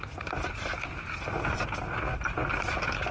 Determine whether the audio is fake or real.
fake